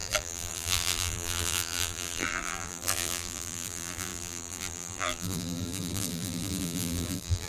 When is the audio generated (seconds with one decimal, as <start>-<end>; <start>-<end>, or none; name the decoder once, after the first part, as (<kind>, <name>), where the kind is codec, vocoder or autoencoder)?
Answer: 0.0-7.5 (vocoder, BigVGAN v2)